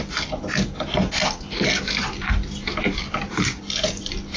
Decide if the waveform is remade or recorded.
recorded